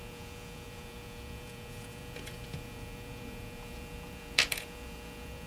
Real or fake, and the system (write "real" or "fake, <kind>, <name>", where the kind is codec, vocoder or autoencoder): fake, vocoder, Vocos